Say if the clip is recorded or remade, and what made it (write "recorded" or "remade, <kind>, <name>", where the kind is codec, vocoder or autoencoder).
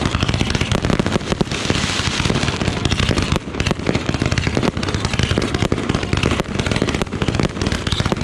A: recorded